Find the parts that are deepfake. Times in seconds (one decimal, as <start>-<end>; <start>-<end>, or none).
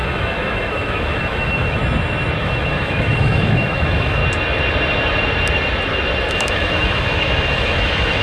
0.0-1.8; 2.4-4.2; 6.3-8.2